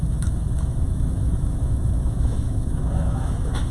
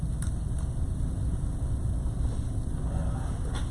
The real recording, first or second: second